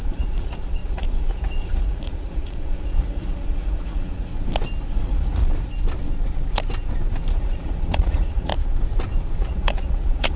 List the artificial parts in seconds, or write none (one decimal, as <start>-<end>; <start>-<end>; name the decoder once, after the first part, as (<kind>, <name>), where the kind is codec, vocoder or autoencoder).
0.0-4.3 (vocoder, Vocos); 4.9-5.4; 7.3-8.5; 9.4-10.4